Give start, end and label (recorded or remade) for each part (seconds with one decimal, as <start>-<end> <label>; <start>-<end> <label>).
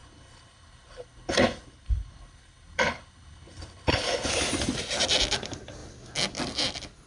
0.0-4.3 remade; 4.3-7.1 recorded